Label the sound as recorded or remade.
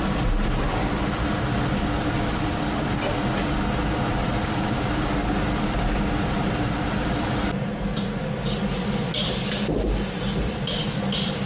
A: recorded